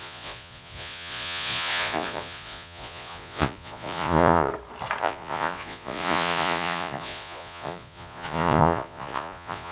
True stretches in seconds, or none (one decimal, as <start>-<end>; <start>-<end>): 4.5-5.0